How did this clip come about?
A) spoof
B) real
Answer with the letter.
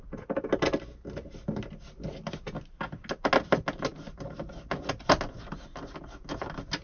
B